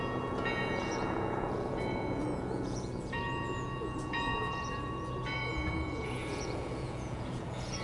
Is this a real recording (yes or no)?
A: no